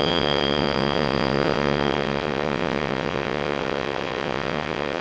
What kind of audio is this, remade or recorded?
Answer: remade